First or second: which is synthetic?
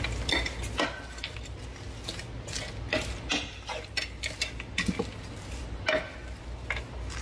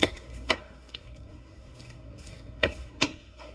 second